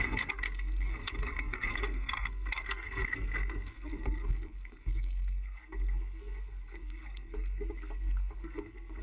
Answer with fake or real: fake